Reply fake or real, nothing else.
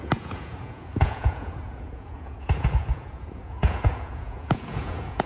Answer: fake